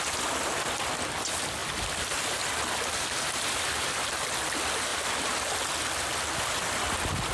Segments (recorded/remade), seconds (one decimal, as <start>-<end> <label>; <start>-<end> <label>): 0.0-7.3 recorded